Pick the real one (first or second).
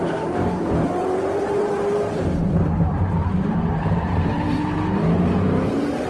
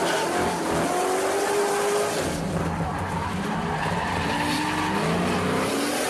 second